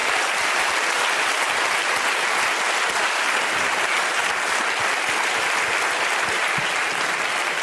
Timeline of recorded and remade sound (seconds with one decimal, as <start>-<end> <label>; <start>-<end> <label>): 0.0-7.6 recorded

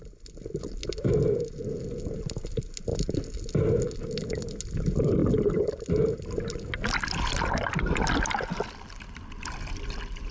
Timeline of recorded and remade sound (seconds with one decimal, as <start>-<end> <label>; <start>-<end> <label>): 0.0-10.3 recorded

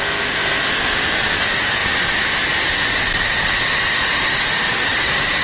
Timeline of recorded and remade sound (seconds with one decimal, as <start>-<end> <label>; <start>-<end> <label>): 0.0-5.4 recorded

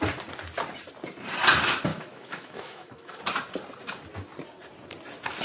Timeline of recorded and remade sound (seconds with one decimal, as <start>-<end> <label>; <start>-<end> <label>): 0.0-1.9 recorded; 1.9-3.2 remade; 3.2-5.4 recorded

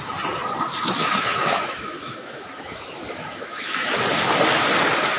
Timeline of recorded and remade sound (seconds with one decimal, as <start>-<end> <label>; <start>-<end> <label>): 0.0-1.0 recorded; 1.0-3.9 remade; 3.9-5.2 recorded

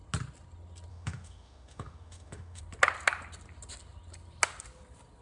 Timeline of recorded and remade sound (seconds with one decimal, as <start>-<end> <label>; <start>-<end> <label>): 0.0-0.9 recorded; 0.9-2.6 remade; 2.6-5.2 recorded

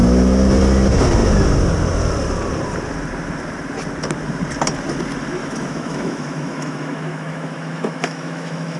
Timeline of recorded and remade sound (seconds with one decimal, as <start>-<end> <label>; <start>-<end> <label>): 0.0-5.4 recorded; 5.4-8.8 remade

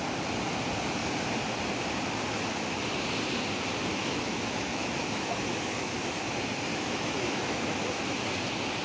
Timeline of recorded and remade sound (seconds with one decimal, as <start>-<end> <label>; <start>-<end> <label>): 0.0-3.9 recorded; 3.9-6.0 remade; 6.0-6.7 recorded; 6.7-7.9 remade; 7.9-8.8 recorded